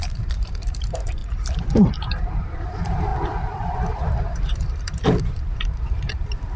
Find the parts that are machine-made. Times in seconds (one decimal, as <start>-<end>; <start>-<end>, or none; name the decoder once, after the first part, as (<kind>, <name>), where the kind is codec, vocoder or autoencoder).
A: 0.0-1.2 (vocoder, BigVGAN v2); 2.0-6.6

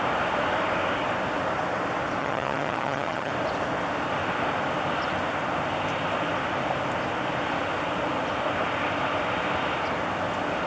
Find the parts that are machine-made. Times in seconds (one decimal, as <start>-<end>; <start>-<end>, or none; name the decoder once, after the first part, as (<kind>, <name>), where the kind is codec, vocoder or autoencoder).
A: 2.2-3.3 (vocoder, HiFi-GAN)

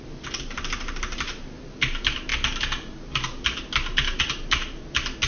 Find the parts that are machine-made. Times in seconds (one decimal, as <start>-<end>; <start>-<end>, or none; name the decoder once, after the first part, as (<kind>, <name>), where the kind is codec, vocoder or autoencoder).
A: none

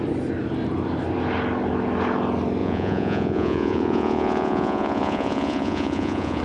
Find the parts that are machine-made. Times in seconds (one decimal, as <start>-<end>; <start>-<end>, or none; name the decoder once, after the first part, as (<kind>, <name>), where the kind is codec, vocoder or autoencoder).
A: 2.6-6.4 (vocoder, Vocos)

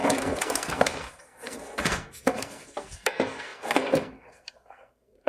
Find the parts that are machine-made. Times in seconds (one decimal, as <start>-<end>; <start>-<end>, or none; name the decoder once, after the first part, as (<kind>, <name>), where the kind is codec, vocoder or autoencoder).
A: 0.0-5.3 (codec, SNAC)